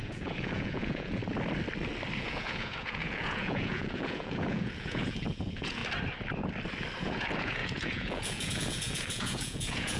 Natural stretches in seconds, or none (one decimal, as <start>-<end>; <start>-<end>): 1.2-2.2; 5.8-7.0